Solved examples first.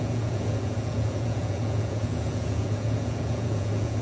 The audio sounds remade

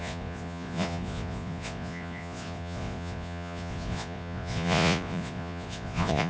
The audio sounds remade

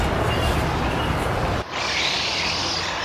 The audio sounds recorded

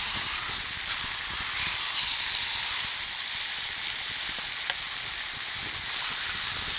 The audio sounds recorded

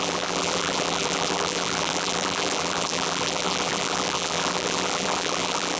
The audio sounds remade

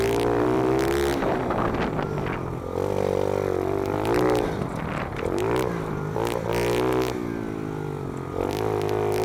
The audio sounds recorded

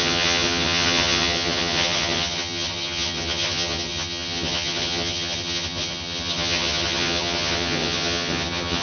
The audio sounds remade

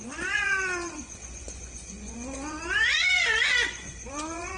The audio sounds remade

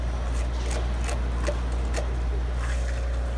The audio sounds recorded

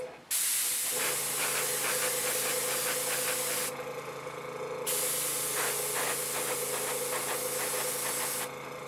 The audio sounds recorded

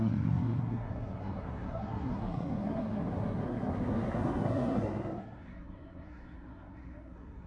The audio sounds remade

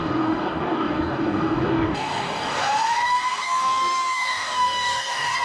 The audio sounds remade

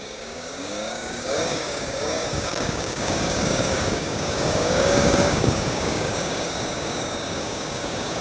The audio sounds remade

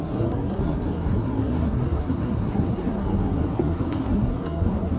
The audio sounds remade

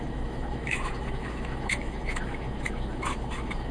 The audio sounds remade